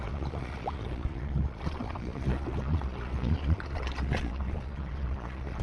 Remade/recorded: remade